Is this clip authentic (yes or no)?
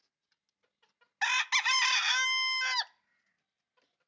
yes